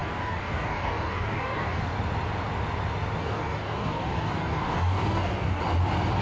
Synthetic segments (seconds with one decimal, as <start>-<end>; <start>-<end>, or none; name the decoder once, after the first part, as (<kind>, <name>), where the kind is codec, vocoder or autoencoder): 0.0-1.8 (codec, DAC); 3.2-5.6